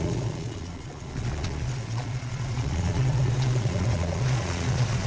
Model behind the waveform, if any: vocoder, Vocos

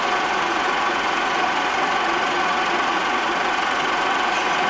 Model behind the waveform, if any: vocoder, Vocos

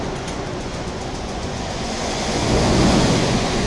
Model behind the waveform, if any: vocoder, Vocos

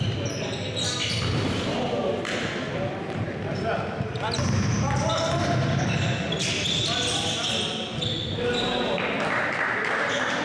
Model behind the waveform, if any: none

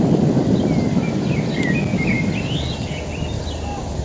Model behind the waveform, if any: none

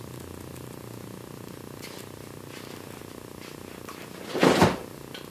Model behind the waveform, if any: none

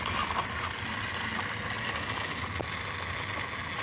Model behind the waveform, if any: none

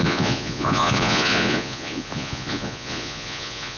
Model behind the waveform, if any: vocoder, Vocos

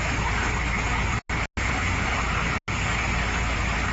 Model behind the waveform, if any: none